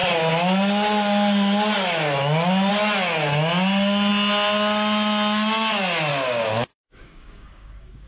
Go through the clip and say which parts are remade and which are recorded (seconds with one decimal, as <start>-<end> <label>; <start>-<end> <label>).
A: 0.0-6.1 recorded; 6.1-8.1 remade